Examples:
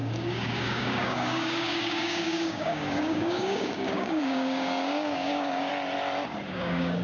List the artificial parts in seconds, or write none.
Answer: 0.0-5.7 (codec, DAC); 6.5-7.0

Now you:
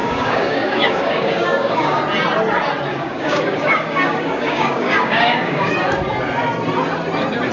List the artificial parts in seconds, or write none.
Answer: 0.0-2.0 (codec, DAC); 2.9-5.7

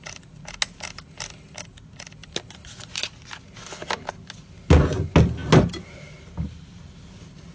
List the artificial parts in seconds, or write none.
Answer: none

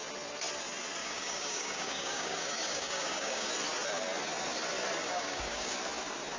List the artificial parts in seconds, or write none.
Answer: 1.0-3.5 (codec, DAC); 5.0-5.7

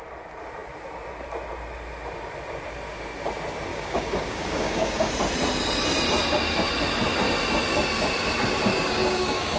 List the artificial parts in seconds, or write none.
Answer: 3.7-5.1 (codec, DAC); 8.7-9.6

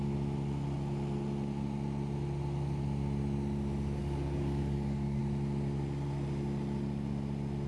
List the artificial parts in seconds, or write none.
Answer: 4.0-5.2 (codec, DAC)